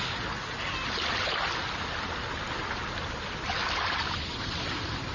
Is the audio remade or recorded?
recorded